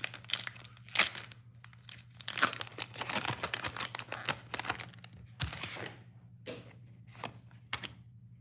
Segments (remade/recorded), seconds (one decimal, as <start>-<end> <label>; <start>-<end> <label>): 0.0-8.4 recorded